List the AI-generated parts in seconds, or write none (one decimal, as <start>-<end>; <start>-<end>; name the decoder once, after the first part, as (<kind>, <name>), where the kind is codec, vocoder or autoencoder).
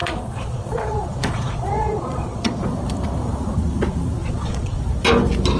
0.0-2.6 (vocoder, Vocos); 4.2-4.8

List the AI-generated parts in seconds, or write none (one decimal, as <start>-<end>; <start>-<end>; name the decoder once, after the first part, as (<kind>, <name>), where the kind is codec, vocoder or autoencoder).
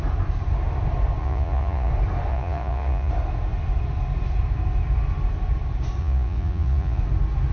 1.2-1.9 (vocoder, Vocos); 2.3-3.1; 6.0-7.0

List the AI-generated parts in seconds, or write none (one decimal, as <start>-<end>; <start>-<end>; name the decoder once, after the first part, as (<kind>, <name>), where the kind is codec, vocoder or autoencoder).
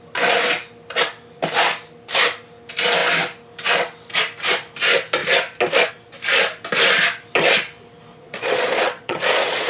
8.1-9.7 (vocoder, Vocos)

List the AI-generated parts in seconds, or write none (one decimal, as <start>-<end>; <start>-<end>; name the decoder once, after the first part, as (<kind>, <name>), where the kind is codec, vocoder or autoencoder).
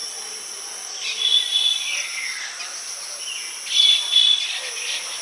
none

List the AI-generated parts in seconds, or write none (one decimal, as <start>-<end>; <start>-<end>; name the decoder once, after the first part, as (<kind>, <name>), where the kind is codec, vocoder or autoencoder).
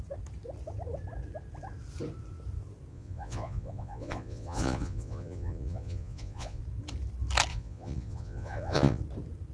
2.9-6.6 (vocoder, Vocos); 7.5-9.0